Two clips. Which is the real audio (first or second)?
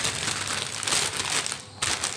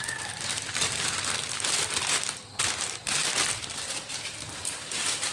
first